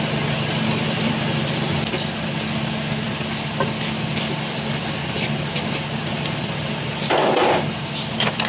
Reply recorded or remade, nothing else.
recorded